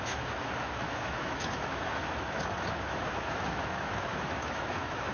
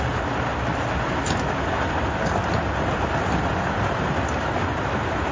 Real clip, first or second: second